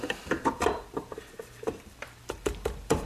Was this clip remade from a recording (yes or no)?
yes